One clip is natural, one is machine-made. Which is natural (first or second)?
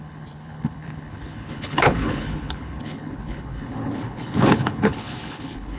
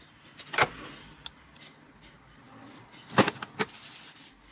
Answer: second